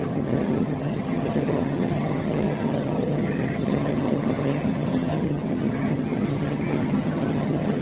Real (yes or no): no